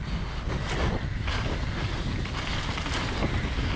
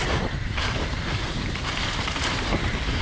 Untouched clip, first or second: first